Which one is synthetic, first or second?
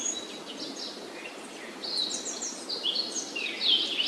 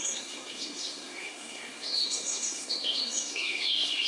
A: second